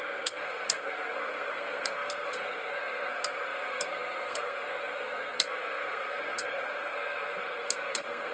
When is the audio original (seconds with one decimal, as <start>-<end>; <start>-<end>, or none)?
none

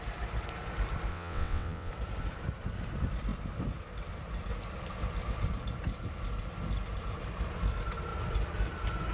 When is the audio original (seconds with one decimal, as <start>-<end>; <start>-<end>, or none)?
0.0-1.1; 1.9-9.1

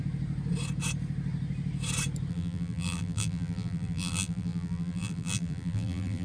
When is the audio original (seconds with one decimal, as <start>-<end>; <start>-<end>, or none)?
0.0-2.3

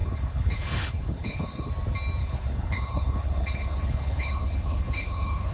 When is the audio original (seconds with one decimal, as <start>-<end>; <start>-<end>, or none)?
1.7-2.2

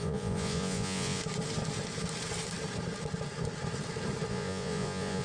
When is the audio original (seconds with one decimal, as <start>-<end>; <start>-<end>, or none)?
1.2-4.3

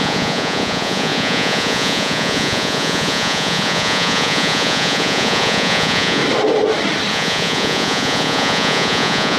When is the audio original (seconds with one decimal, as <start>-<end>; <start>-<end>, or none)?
6.2-7.1

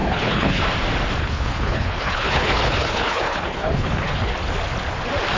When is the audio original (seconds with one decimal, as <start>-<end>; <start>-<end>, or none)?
0.6-1.2; 4.3-5.4